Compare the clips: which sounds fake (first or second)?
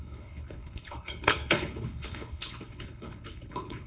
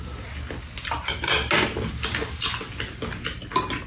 first